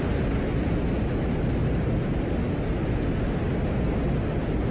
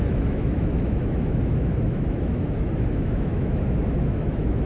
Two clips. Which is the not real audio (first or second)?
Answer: second